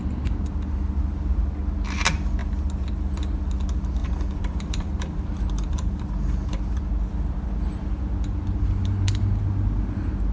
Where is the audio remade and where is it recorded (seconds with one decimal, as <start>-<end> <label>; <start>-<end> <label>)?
0.0-4.0 recorded; 4.0-5.4 remade; 5.4-10.3 recorded